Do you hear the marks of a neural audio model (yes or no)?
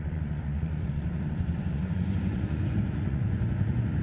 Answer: yes